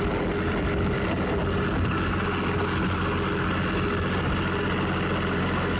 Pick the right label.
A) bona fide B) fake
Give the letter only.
A